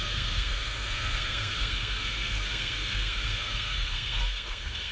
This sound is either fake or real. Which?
fake